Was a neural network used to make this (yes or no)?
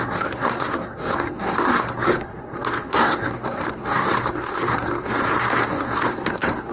yes